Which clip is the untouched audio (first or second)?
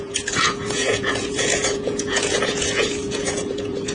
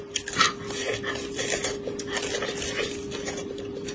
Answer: second